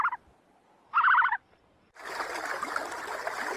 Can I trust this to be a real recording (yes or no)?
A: yes